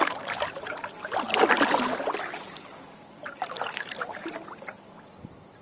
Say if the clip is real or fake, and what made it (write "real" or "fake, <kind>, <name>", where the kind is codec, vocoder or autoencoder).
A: real